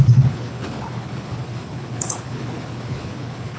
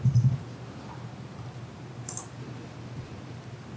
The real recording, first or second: second